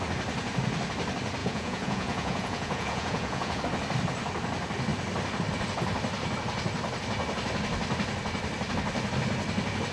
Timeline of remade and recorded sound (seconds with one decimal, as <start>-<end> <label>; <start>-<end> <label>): 0.0-1.4 recorded; 1.4-3.6 remade; 3.6-9.9 recorded